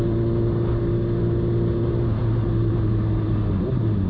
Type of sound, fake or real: real